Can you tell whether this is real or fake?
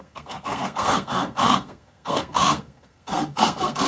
fake